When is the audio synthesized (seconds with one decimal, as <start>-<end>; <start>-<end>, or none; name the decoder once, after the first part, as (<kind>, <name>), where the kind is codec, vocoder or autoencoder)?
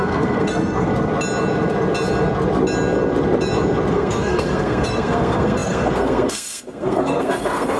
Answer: 0.0-0.9 (codec, SNAC); 3.9-7.8